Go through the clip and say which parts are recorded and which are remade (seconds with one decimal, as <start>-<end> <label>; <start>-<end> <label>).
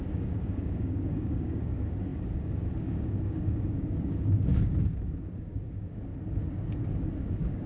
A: 0.0-6.1 remade; 6.1-7.2 recorded; 7.2-7.7 remade